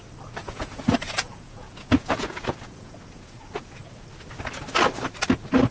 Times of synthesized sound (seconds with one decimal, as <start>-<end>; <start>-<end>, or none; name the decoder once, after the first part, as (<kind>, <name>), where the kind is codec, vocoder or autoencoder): 0.4-3.8 (vocoder, Vocos)